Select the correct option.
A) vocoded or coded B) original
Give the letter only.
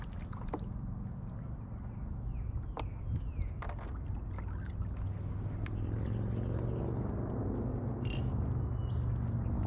B